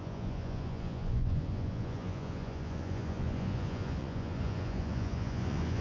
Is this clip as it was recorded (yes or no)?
no